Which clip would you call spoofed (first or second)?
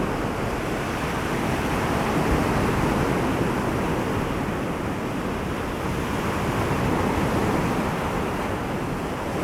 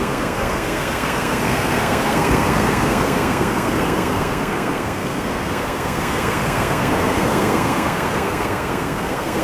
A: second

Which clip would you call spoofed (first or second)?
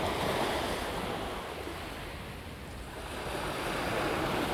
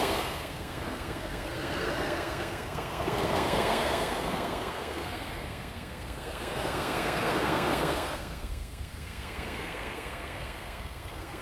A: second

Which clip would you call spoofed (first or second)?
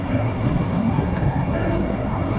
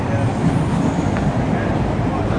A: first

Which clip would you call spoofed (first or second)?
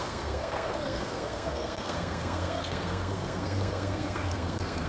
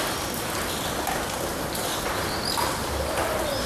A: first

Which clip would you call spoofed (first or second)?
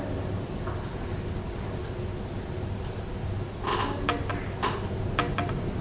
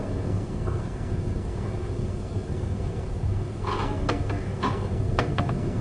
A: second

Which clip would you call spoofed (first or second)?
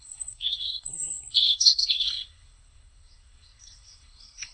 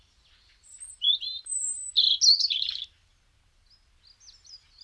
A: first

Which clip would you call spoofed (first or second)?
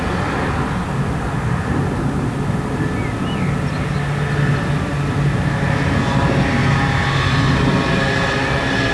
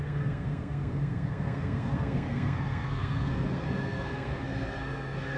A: second